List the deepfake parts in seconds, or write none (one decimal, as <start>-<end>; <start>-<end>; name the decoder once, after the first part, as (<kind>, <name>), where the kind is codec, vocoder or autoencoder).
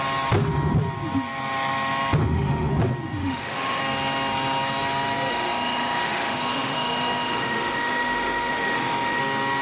2.2-2.7 (autoencoder, DAC-VAE); 3.2-3.8; 5.3-9.2